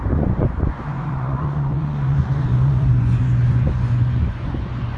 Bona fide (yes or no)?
no